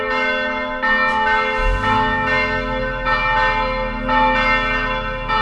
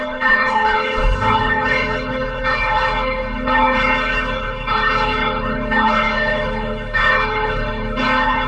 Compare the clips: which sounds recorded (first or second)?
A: first